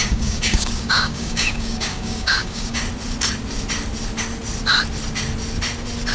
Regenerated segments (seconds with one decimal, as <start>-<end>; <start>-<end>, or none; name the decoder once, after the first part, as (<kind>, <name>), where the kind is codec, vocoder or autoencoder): 0.0-2.8 (codec, DAC)